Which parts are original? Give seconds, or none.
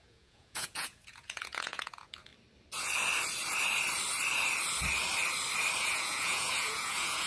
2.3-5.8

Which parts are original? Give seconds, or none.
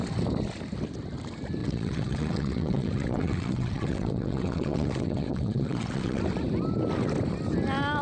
0.0-1.6; 6.2-8.0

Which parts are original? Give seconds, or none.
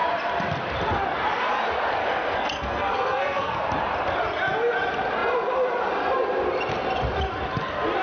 0.0-2.0; 3.6-8.0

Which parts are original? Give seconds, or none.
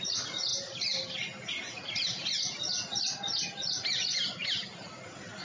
0.0-5.4